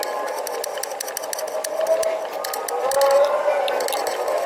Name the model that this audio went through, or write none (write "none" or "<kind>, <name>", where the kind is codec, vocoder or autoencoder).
none